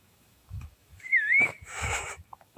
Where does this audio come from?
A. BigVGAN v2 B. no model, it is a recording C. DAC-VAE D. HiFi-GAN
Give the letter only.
C